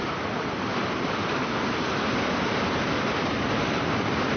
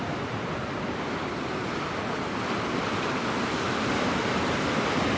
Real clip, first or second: second